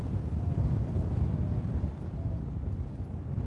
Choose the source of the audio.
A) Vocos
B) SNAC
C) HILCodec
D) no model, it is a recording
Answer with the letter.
D